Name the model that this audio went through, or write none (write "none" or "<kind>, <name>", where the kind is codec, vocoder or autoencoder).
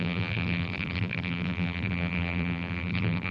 vocoder, BigVGAN v2